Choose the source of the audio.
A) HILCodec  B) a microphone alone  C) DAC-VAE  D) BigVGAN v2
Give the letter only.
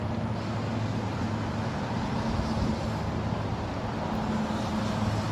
B